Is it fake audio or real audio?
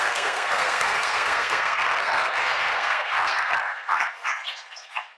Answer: fake